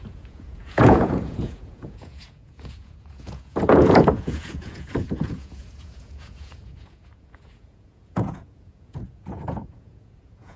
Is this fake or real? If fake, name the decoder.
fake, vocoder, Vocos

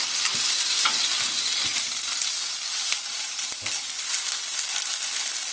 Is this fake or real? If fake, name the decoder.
real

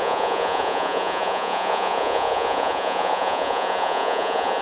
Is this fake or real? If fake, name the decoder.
fake, vocoder, Vocos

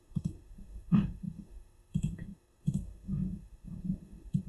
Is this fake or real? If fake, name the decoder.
fake, autoencoder, DAC-VAE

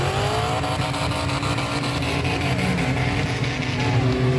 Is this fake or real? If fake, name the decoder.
real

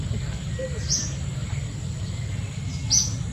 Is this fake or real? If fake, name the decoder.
real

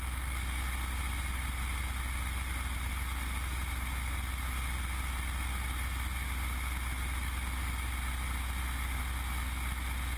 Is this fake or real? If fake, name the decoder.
real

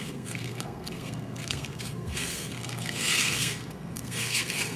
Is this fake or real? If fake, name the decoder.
fake, codec, SNAC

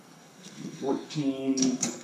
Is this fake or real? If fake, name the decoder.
fake, codec, SNAC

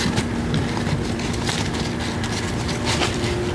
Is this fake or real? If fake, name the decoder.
fake, vocoder, BigVGAN v2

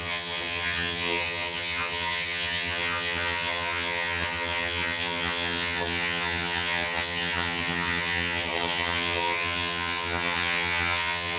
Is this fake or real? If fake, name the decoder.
fake, vocoder, HiFi-GAN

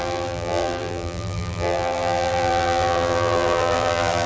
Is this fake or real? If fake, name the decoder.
fake, vocoder, BigVGAN v2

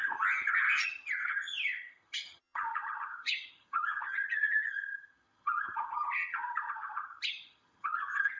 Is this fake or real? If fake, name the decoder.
fake, vocoder, HiFi-GAN